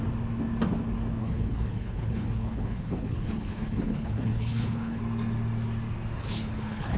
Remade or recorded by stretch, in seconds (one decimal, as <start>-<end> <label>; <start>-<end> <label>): 0.0-1.2 recorded; 1.2-5.0 remade; 5.0-6.2 recorded; 6.2-7.0 remade